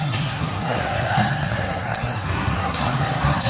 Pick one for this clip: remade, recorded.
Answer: remade